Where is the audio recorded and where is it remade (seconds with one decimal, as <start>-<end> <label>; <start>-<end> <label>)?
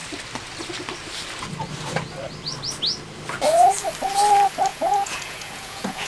0.0-4.7 recorded; 4.7-6.1 remade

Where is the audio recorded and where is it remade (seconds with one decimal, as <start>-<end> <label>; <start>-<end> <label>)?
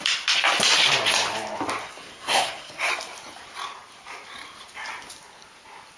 0.0-1.8 recorded; 1.8-2.9 remade; 2.9-6.0 recorded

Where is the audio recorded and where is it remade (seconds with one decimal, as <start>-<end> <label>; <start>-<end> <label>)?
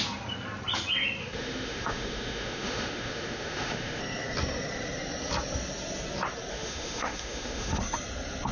0.0-1.2 recorded; 1.2-4.0 remade; 4.0-6.5 recorded; 6.5-7.8 remade; 7.8-8.5 recorded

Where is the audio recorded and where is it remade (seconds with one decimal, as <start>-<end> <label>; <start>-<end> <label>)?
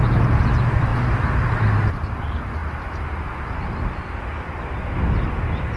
0.0-0.9 remade; 0.9-1.8 recorded; 1.8-2.6 remade; 2.6-3.2 recorded; 3.2-5.8 remade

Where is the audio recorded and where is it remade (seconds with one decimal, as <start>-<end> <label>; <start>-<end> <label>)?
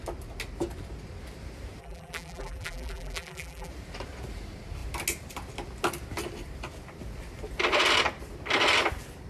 0.0-1.8 recorded; 1.8-3.7 remade; 3.7-9.3 recorded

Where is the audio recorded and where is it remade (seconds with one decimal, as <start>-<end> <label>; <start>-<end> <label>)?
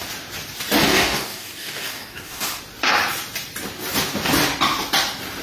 0.0-0.9 recorded; 0.9-2.6 remade; 2.6-5.4 recorded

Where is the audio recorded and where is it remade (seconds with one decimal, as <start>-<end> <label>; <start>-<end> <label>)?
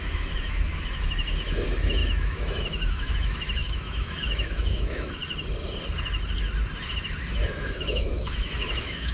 0.0-5.2 remade; 5.2-7.3 recorded; 7.3-9.1 remade